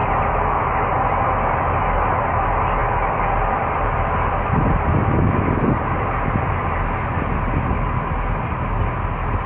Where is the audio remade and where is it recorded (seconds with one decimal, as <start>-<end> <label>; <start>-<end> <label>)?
0.0-9.5 recorded